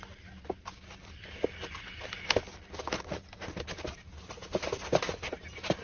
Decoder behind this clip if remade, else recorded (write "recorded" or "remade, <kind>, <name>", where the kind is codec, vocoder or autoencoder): recorded